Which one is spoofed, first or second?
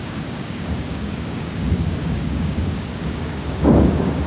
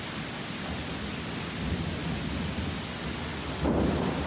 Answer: first